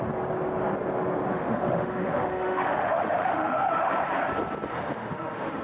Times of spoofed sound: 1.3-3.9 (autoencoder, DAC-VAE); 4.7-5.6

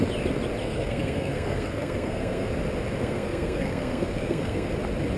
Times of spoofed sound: 0.6-2.5 (codec, SNAC); 3.0-4.7

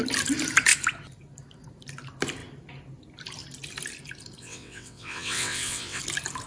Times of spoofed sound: 4.4-6.0 (vocoder, WaveNeXt)

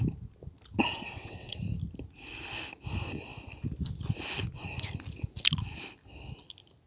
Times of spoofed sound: 0.9-1.6 (vocoder, WaveNeXt)

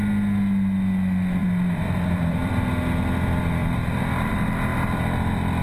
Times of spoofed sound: 1.4-2.7 (vocoder, BigVGAN v2); 3.6-4.3

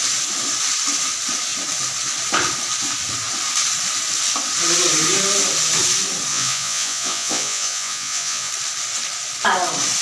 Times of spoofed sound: 6.3-8.5 (vocoder, Vocos)

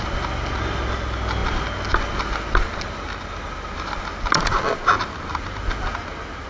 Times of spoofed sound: none